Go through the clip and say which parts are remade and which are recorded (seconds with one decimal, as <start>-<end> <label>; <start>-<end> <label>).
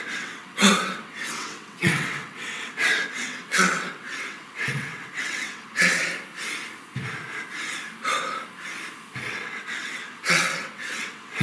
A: 0.0-6.0 remade; 6.0-9.2 recorded; 9.2-11.4 remade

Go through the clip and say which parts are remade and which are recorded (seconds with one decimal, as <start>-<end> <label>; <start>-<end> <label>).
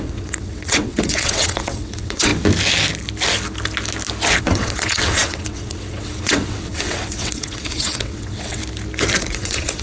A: 0.0-2.3 remade; 2.3-4.4 recorded; 4.4-8.6 remade; 8.6-9.3 recorded; 9.3-9.8 remade